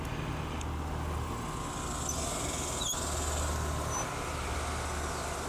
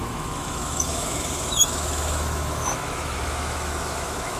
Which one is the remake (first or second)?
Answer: second